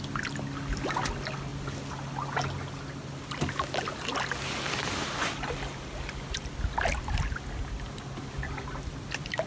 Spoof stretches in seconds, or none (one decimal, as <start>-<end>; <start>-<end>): none